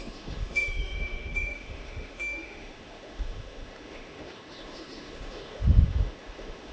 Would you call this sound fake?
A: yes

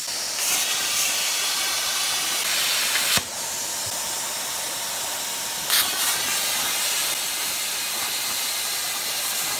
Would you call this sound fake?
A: no